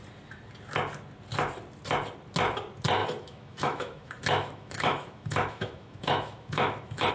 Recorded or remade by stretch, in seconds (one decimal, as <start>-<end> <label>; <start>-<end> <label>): 0.0-3.0 recorded; 3.0-7.1 remade